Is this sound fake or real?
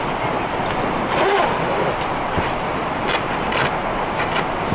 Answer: real